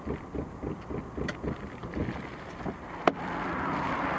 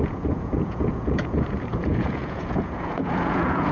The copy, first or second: second